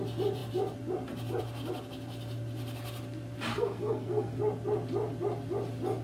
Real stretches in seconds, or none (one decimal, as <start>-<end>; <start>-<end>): 0.0-3.5; 4.4-6.0